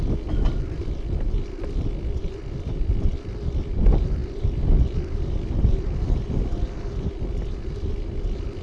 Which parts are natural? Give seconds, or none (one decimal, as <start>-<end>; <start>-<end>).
0.0-8.6